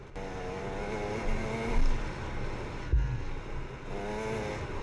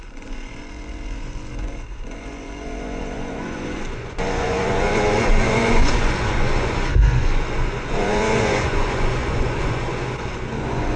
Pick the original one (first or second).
first